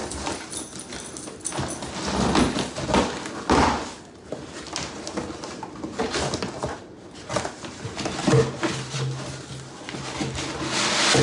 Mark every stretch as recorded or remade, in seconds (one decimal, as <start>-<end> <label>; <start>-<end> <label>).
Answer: 0.0-11.2 recorded